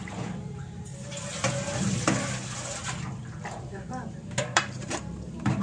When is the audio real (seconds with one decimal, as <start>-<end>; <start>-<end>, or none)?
0.9-3.5